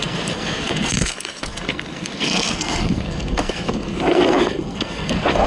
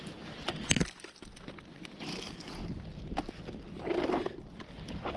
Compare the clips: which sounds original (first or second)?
second